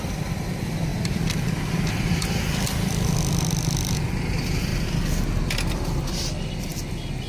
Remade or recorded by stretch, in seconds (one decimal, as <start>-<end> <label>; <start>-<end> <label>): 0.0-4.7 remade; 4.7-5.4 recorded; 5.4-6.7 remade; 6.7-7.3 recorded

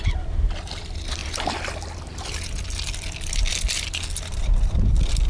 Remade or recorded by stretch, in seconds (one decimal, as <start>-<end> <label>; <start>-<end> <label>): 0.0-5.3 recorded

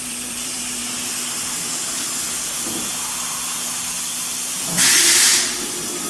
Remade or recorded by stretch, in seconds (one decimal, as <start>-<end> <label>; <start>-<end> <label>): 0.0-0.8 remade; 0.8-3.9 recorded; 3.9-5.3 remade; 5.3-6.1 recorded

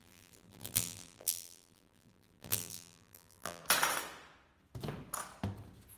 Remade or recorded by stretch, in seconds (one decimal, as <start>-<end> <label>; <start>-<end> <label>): 0.0-3.6 remade; 3.6-6.0 recorded

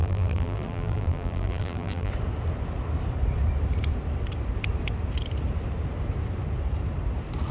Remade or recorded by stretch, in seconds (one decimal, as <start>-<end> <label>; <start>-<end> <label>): 0.0-2.1 remade; 2.1-7.5 recorded

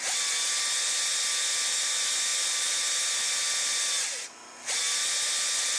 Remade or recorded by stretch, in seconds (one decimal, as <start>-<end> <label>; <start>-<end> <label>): 0.0-5.8 recorded